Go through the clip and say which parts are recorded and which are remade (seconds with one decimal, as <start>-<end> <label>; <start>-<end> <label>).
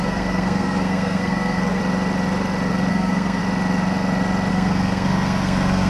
0.0-1.8 remade; 1.8-2.9 recorded; 2.9-3.4 remade; 3.4-4.5 recorded; 4.5-5.9 remade